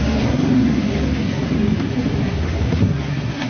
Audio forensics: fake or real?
fake